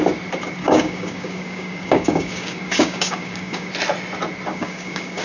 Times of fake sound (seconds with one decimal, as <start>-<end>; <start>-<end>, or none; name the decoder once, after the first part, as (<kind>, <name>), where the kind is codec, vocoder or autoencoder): 0.6-3.7 (codec, DAC); 4.5-5.2